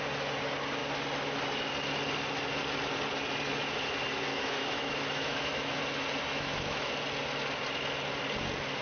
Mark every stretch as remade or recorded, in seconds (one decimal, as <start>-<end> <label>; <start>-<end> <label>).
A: 0.0-4.3 recorded; 4.3-5.8 remade; 5.8-6.3 recorded; 6.3-6.9 remade; 6.9-8.8 recorded